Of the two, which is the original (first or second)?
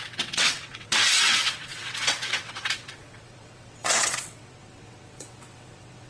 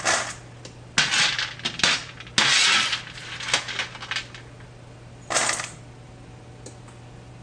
second